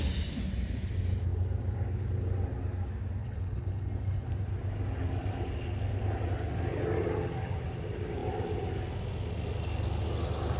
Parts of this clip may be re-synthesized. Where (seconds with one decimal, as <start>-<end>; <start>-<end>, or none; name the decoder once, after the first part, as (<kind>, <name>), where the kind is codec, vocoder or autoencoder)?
3.2-4.3 (codec, HILCodec)